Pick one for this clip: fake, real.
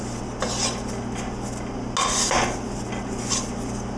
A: real